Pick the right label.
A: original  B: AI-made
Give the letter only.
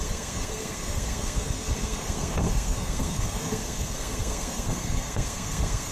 B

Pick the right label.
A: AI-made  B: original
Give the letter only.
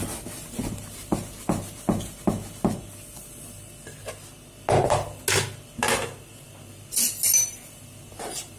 B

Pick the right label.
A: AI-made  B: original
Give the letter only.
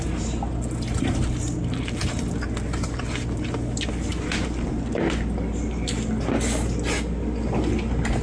B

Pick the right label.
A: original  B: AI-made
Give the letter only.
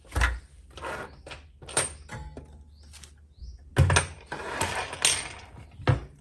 A